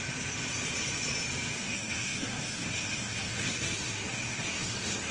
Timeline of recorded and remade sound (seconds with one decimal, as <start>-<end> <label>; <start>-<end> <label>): 0.0-1.6 recorded; 1.6-5.1 remade